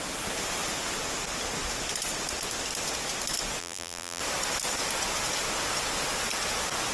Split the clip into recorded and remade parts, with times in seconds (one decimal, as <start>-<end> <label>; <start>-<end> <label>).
0.0-3.6 recorded; 3.6-4.2 remade; 4.2-6.9 recorded